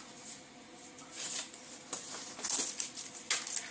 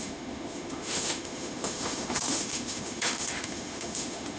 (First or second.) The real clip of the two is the first